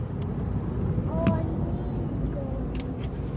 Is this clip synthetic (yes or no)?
no